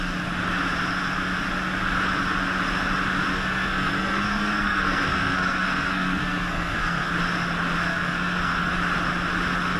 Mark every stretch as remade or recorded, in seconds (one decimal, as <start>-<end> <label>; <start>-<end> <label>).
0.0-3.3 recorded; 3.3-7.1 remade; 7.1-7.9 recorded; 7.9-8.8 remade; 8.8-9.8 recorded